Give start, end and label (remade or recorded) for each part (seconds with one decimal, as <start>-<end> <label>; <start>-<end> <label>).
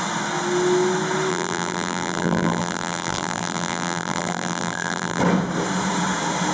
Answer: 0.0-1.3 recorded; 1.3-5.2 remade; 5.2-6.5 recorded